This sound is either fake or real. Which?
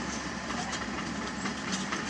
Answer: fake